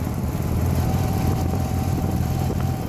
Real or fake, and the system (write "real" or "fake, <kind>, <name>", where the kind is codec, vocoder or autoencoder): fake, vocoder, BigVGAN v2